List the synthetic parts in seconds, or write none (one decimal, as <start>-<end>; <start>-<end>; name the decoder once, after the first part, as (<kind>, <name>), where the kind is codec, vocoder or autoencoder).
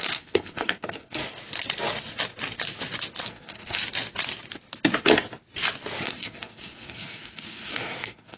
0.0-1.2 (codec, SNAC); 3.2-3.8; 6.0-8.4